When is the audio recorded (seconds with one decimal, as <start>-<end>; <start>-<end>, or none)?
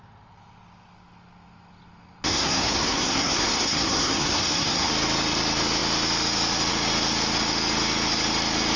0.0-2.3; 4.9-8.8